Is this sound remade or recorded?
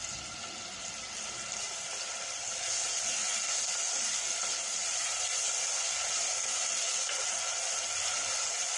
recorded